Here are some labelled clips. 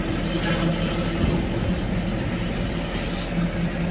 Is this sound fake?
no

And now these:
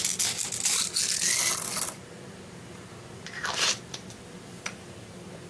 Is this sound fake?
no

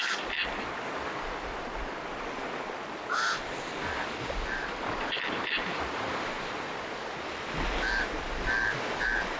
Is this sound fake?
no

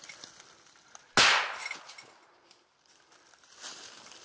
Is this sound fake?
no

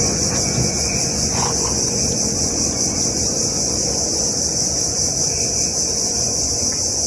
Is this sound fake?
yes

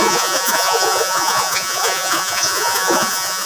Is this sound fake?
yes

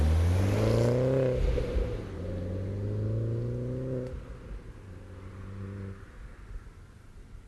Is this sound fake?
no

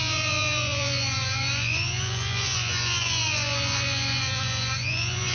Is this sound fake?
yes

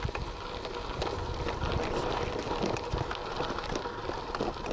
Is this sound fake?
no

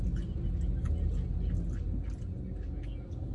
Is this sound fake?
no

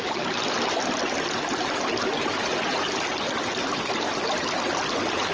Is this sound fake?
no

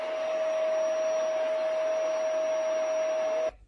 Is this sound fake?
no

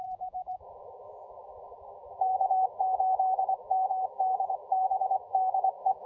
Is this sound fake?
yes